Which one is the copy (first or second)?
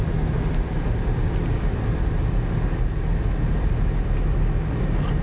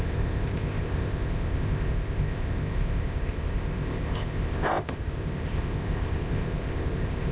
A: second